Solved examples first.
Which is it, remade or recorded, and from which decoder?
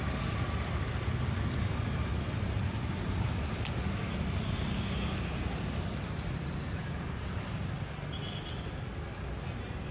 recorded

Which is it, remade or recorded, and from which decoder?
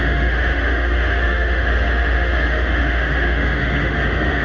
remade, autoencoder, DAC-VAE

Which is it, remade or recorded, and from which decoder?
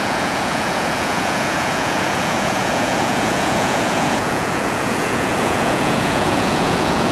remade, vocoder, Vocos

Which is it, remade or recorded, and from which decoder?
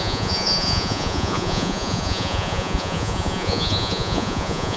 remade, vocoder, Vocos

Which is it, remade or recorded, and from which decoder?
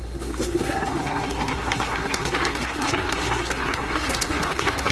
remade, codec, SNAC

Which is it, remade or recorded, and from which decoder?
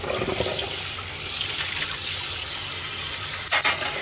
recorded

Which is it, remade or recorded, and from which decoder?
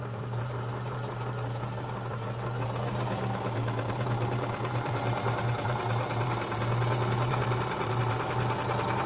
remade, vocoder, BigVGAN v2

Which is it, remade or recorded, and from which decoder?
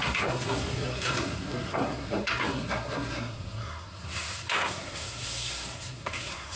remade, codec, SNAC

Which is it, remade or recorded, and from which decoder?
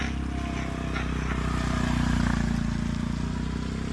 recorded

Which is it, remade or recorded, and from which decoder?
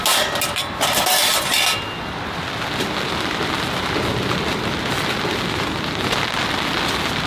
recorded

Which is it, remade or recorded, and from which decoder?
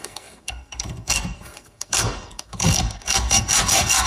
remade, codec, SNAC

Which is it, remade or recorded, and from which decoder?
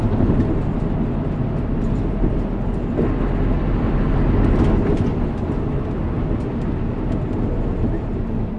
recorded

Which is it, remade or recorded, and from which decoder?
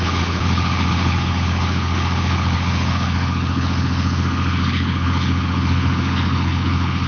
remade, codec, HILCodec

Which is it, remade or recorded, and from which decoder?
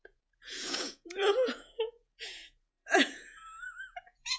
remade, vocoder, Vocos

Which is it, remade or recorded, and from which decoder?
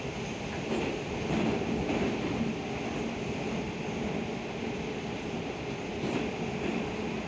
recorded